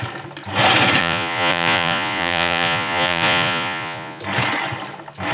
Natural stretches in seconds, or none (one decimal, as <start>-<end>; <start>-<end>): 0.0-1.0; 4.2-5.3